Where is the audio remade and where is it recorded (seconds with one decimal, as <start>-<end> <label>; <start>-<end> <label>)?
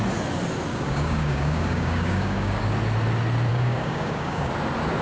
0.0-0.7 recorded; 0.7-2.6 remade; 2.6-3.5 recorded; 3.5-4.5 remade; 4.5-5.0 recorded